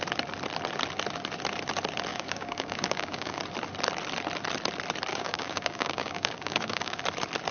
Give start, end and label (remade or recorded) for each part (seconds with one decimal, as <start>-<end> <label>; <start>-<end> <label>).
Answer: 0.0-2.1 recorded; 2.1-3.4 remade; 3.4-5.1 recorded; 5.1-7.0 remade; 7.0-7.5 recorded